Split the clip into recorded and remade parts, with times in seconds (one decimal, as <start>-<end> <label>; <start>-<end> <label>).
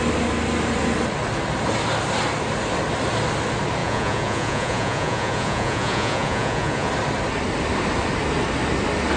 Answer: 0.0-3.8 recorded; 3.8-6.9 remade; 6.9-9.2 recorded